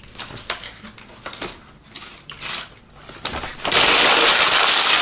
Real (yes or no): yes